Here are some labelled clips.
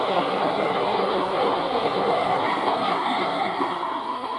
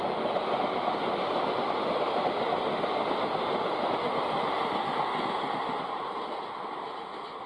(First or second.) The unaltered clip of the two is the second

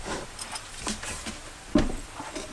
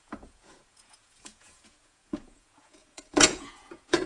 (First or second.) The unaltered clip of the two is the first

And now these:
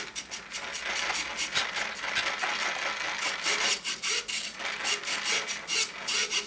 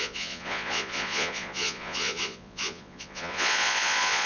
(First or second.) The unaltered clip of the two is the first